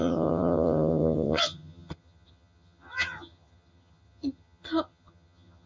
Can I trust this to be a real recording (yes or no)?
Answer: no